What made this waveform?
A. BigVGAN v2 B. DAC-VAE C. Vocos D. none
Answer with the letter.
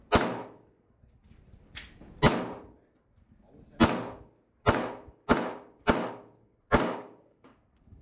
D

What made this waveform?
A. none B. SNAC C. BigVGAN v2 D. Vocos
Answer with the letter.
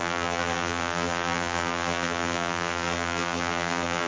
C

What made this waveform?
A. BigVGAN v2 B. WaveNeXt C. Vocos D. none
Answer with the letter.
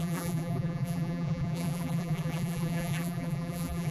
A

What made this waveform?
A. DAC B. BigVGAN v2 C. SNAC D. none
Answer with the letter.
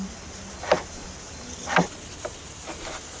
D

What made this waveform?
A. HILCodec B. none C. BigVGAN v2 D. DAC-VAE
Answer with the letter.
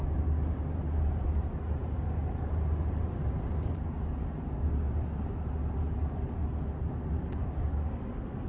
B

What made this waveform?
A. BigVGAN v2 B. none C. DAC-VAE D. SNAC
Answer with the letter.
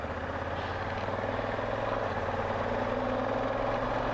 B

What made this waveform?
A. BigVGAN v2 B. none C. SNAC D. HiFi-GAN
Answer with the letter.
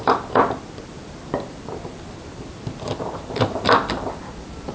A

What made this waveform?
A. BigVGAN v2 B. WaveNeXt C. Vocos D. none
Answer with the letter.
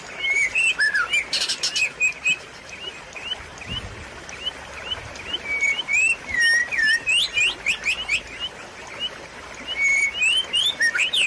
D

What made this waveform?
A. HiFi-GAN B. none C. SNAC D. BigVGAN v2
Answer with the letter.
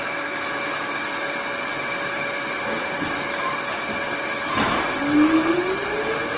B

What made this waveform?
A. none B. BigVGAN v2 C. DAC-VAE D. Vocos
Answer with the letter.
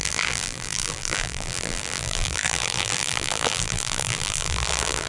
B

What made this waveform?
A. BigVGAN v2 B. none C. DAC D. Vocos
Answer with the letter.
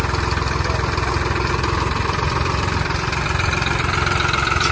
B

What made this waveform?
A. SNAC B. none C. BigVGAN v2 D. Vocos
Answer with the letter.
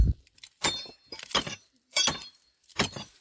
C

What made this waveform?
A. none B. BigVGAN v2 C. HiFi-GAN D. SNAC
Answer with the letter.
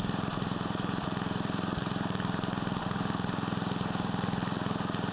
B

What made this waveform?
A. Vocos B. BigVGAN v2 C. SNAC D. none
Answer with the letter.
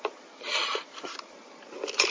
B